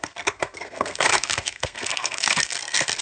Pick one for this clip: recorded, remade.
remade